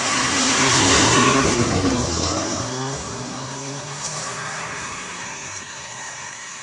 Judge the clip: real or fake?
fake